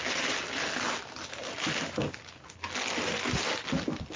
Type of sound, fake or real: real